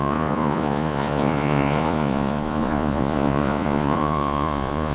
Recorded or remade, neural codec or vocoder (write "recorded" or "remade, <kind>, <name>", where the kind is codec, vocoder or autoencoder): remade, vocoder, Vocos